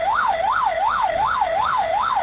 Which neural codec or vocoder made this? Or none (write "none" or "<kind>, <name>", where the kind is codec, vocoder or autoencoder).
autoencoder, DAC-VAE